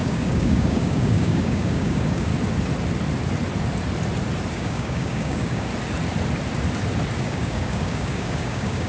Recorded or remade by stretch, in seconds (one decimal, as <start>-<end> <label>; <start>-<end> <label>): 0.0-2.3 remade; 2.3-4.5 recorded; 4.5-5.7 remade; 5.7-7.2 recorded; 7.2-8.9 remade